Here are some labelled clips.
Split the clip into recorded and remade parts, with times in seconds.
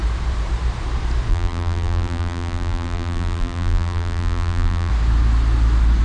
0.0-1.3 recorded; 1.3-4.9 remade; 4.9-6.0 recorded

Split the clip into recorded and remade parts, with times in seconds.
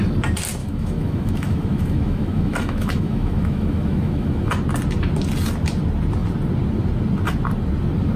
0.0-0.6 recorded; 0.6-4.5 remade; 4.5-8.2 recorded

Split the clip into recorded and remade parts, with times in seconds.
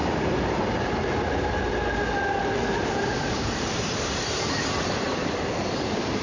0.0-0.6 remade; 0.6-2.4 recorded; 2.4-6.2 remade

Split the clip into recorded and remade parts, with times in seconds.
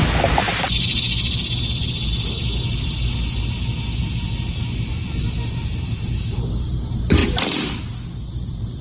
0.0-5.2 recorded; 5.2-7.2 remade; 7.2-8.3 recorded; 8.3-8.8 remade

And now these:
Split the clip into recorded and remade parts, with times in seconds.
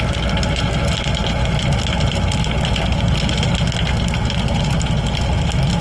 0.0-5.8 recorded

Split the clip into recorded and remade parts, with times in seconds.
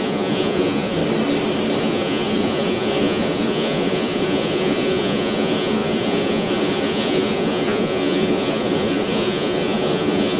0.0-1.0 remade; 1.0-1.8 recorded; 1.8-10.4 remade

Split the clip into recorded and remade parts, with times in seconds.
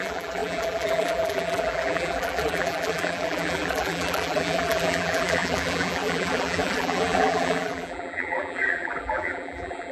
0.0-9.9 remade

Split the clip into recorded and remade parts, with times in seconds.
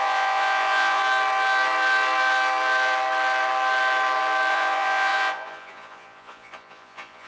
0.0-1.0 remade; 1.0-4.5 recorded; 4.5-7.3 remade